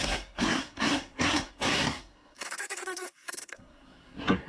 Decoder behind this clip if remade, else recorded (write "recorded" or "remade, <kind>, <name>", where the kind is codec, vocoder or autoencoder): remade, codec, SNAC